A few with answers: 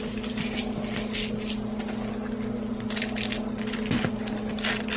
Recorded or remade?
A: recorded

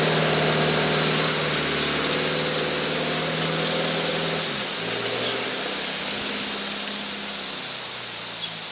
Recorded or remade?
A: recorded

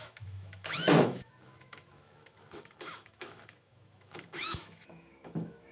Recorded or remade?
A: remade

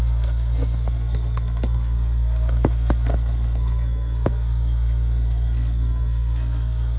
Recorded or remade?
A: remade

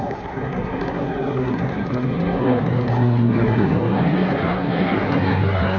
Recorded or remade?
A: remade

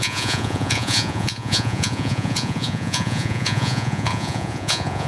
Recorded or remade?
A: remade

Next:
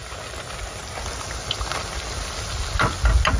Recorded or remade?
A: recorded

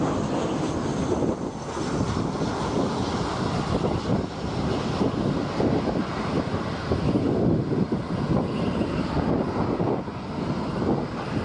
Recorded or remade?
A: recorded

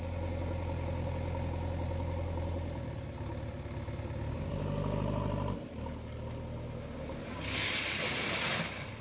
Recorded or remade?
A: recorded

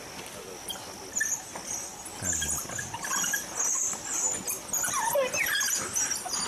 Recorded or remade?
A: recorded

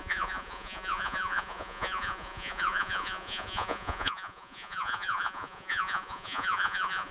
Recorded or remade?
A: remade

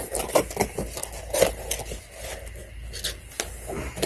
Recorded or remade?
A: recorded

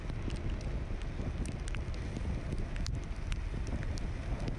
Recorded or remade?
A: recorded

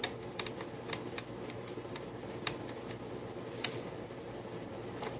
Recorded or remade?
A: remade